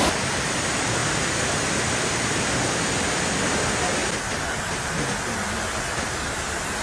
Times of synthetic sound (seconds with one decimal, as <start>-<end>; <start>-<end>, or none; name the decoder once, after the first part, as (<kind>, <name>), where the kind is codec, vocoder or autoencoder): none